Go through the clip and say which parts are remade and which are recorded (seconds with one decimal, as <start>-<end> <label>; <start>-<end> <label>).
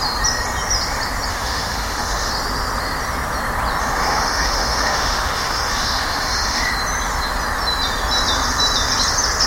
0.0-1.3 recorded; 1.3-2.3 remade; 2.3-3.8 recorded; 3.8-6.7 remade; 6.7-9.5 recorded